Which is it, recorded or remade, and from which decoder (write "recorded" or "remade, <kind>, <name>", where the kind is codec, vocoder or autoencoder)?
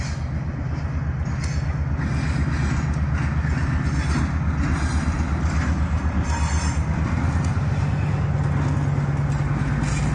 recorded